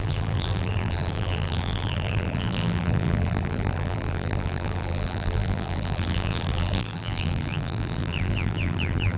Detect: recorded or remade remade